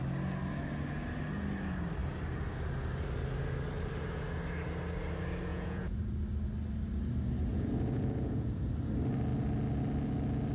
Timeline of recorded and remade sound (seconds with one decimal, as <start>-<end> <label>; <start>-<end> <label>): 0.0-5.5 recorded; 5.5-6.0 remade; 6.0-7.5 recorded; 7.5-8.7 remade; 8.7-10.5 recorded